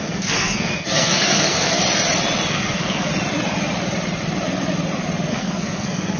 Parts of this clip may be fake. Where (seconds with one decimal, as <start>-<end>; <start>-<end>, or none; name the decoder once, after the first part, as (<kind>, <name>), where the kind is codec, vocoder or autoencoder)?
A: 0.0-1.8 (codec, SNAC); 2.5-3.1; 5.3-6.2